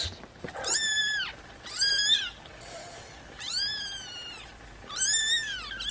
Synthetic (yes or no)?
no